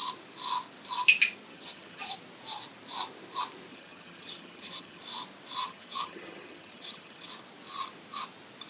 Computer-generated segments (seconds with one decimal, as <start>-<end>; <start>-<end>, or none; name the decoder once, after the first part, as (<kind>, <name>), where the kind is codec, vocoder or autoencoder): 1.5-2.1 (vocoder, HiFi-GAN); 3.7-5.0; 5.6-7.3